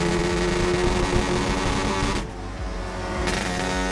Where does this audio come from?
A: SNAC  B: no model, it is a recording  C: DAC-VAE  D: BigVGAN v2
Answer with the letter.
B